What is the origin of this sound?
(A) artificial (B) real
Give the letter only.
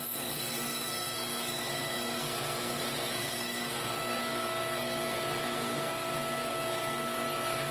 A